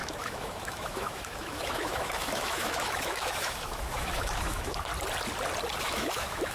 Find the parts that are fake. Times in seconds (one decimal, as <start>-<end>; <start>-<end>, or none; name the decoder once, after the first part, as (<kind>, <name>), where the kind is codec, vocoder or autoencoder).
0.0-4.9 (autoencoder, DAC-VAE); 5.8-6.5